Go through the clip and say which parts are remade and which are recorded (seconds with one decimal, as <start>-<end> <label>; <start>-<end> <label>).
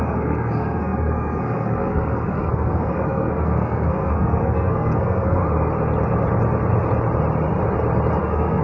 0.0-5.4 remade; 5.4-8.2 recorded; 8.2-8.6 remade